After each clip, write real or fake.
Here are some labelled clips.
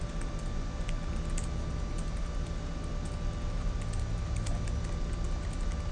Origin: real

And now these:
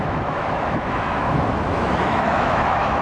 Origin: fake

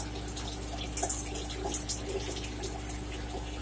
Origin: real